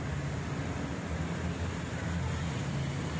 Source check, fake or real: real